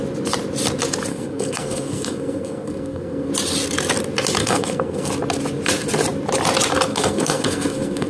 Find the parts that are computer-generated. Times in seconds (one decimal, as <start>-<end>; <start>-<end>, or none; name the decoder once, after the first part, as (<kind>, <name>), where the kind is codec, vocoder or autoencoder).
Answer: 1.1-3.3 (codec, SNAC); 4.4-5.1; 6.9-8.1